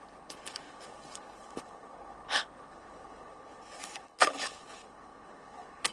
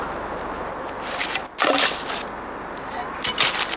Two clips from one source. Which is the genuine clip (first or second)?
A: second